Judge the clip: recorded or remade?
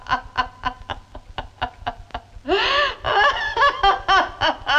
recorded